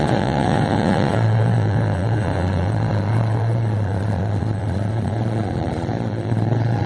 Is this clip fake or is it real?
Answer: fake